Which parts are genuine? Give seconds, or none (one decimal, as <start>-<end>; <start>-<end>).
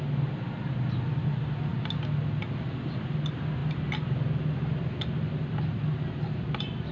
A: 0.0-6.9